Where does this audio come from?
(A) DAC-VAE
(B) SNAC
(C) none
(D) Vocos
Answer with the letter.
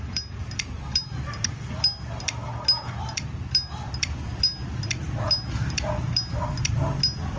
C